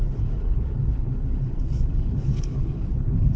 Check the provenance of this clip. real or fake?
fake